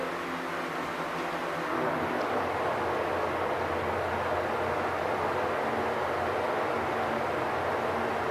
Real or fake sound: real